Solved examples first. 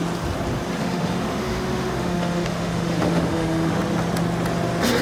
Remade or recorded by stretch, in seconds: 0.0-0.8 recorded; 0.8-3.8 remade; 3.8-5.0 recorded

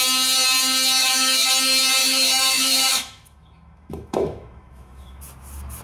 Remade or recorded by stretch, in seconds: 0.0-1.0 recorded; 1.0-1.5 remade; 1.5-2.0 recorded; 2.0-5.2 remade; 5.2-5.8 recorded

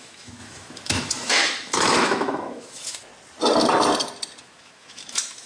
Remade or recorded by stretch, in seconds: 0.0-3.1 remade; 3.1-4.4 recorded; 4.4-5.5 remade